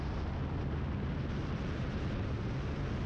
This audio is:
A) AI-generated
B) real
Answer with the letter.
B